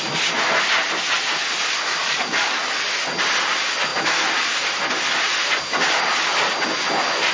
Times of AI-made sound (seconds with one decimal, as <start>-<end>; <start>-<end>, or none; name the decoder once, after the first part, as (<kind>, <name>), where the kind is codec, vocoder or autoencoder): 2.0-2.6 (codec, DAC)